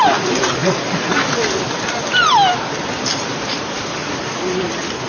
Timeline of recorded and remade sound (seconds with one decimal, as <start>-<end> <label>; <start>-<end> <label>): 0.0-0.6 remade; 0.6-2.8 recorded; 2.8-5.1 remade